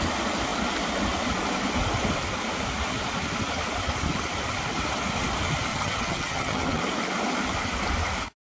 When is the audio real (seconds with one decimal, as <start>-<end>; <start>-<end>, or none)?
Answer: 0.0-5.7; 6.8-8.4